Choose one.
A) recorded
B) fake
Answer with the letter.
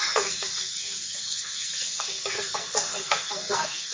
B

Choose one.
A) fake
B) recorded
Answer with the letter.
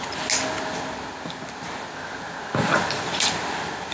B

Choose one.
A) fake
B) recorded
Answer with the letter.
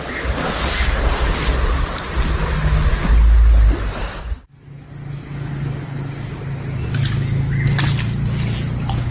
B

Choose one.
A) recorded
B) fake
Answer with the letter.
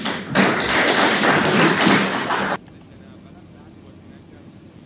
A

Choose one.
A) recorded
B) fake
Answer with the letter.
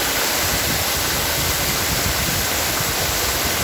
A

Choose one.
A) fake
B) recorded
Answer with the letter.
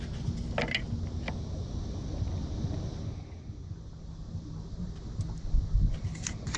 B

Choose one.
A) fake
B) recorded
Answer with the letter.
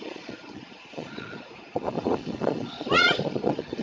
A